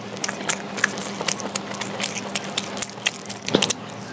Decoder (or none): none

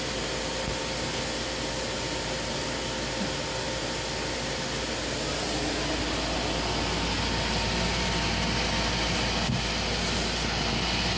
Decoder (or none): none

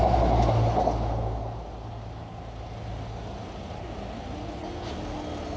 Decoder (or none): none